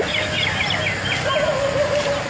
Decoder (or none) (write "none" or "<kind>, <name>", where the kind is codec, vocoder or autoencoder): none